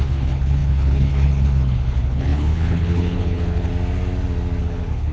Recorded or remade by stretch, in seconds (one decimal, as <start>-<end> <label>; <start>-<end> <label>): 0.0-3.7 remade; 3.7-4.6 recorded; 4.6-5.1 remade